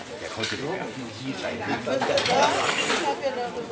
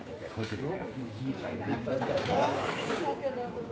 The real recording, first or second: first